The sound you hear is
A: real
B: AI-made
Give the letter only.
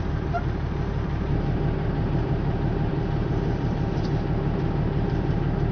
B